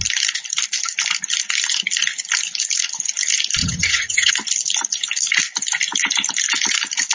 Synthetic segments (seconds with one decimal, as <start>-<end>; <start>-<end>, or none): 3.6-4.3